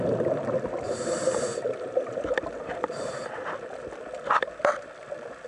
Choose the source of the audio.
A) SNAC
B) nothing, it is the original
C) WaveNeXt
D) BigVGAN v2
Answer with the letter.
B